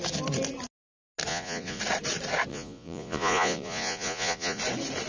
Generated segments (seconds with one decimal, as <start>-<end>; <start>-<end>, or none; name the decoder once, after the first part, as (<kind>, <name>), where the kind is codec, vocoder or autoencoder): 1.3-1.8 (vocoder, Vocos); 2.5-4.6